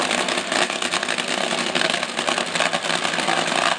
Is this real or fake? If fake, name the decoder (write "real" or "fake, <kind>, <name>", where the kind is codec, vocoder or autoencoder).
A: real